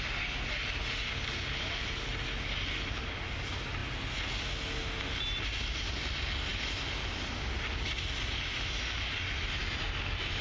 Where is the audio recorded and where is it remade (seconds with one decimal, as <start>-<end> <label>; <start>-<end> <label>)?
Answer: 0.0-10.4 recorded